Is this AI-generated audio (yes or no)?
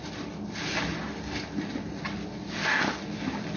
no